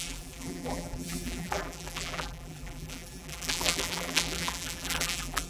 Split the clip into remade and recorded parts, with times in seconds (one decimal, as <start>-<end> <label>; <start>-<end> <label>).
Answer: 0.0-5.5 remade